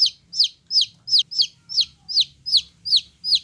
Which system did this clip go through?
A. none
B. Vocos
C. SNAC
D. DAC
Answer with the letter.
A